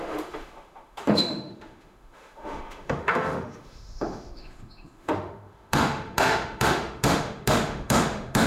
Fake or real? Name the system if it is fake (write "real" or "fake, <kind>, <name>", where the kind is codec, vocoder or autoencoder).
fake, autoencoder, DAC-VAE